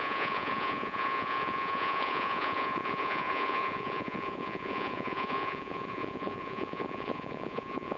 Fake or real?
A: fake